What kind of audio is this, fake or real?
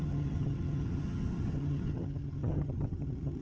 fake